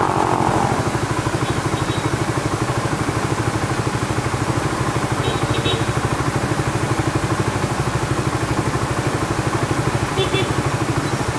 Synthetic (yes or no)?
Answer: no